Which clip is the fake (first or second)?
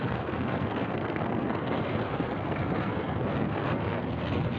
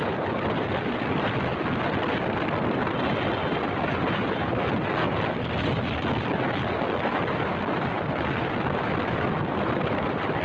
first